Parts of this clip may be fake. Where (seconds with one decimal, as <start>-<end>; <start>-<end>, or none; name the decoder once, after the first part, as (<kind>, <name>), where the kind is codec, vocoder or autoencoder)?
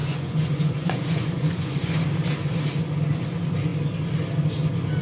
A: 0.0-1.9 (vocoder, Vocos)